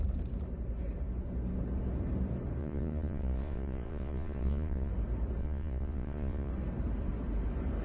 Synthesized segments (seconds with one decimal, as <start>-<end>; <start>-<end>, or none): 2.6-4.9; 5.4-6.5